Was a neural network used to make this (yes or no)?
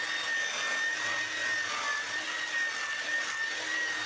no